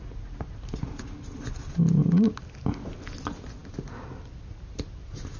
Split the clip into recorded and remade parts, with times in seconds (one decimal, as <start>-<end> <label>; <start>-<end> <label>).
0.0-5.4 recorded